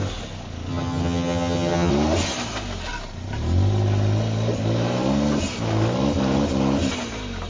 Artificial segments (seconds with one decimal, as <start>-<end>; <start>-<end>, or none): 0.7-1.9